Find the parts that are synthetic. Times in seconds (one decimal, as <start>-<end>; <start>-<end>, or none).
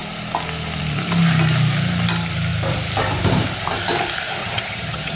4.4-5.2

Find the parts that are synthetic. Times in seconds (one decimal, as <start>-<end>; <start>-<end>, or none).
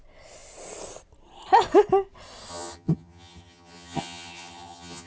2.5-5.1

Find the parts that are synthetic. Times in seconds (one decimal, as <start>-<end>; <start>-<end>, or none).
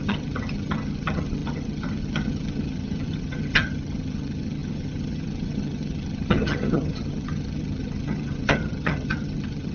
0.0-9.7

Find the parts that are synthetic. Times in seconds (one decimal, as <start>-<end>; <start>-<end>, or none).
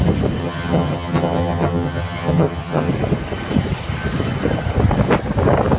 0.4-2.9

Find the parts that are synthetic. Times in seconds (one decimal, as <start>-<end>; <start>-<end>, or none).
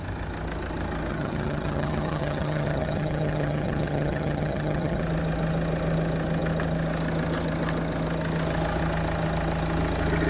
1.1-5.0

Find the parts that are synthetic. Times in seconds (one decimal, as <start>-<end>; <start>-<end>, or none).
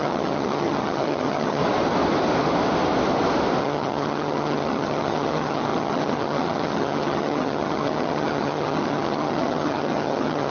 0.0-1.6; 3.6-10.5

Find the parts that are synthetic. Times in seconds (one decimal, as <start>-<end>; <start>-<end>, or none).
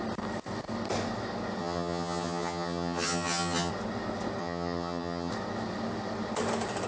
1.6-3.7; 4.4-5.3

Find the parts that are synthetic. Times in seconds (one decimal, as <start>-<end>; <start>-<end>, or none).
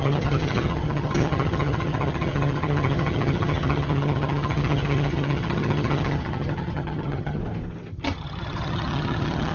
0.0-7.4; 7.9-9.5